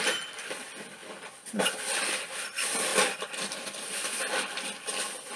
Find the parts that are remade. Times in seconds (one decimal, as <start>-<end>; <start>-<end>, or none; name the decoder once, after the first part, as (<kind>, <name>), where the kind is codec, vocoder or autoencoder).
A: 0.0-1.0 (vocoder, BigVGAN v2); 1.6-5.4